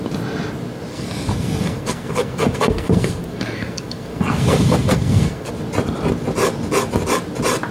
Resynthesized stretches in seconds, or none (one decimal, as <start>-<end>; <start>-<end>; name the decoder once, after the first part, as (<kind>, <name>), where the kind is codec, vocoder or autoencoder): 0.9-5.5 (codec, SNAC)